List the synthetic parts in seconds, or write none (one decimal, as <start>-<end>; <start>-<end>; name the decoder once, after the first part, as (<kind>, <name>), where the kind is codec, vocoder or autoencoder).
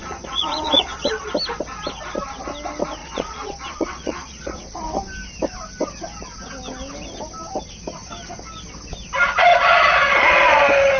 0.0-1.3 (vocoder, Vocos); 3.0-4.6; 9.5-10.6